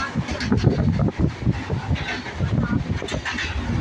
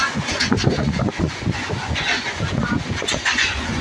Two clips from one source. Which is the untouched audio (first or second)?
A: first